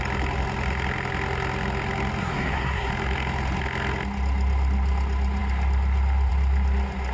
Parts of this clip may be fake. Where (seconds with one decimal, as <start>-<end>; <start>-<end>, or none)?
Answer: 2.2-2.9